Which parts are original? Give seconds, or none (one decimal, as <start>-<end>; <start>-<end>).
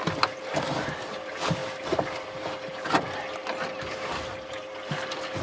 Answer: 0.0-5.4